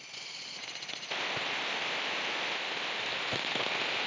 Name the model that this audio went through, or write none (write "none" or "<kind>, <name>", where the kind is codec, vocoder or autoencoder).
none